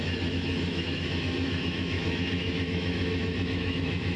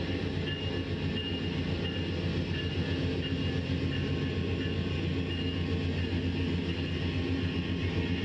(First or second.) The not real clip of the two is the first